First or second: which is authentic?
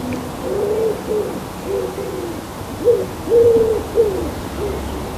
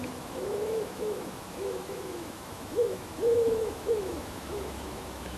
first